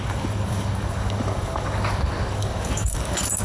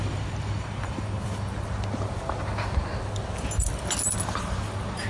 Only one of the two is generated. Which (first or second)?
first